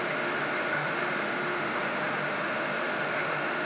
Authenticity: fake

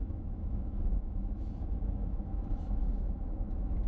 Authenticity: fake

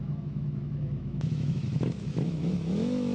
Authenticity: fake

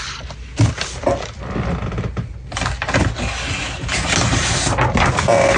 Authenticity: real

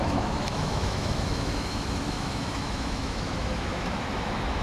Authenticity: fake